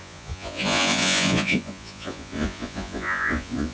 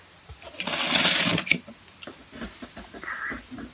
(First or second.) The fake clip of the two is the first